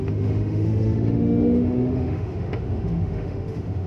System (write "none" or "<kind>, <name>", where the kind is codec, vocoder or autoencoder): autoencoder, DAC-VAE